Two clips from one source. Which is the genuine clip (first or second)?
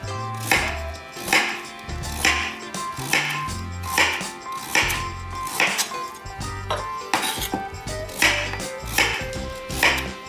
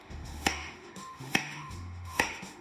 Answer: first